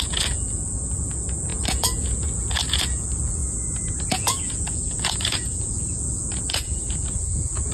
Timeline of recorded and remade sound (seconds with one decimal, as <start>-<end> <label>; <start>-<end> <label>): 0.0-3.4 remade; 3.4-4.1 recorded; 4.1-7.7 remade